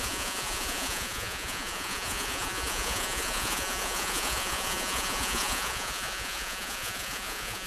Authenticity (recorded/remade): remade